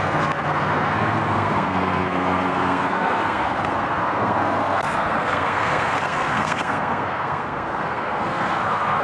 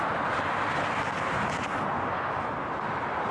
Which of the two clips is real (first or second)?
second